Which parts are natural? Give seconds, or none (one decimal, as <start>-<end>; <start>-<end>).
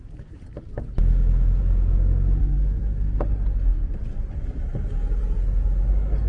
0.0-2.4; 3.2-6.3